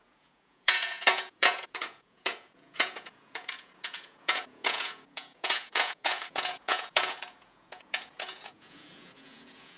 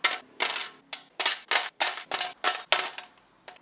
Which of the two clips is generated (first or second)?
first